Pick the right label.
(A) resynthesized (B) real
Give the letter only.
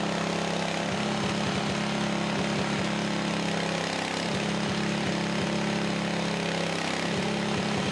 B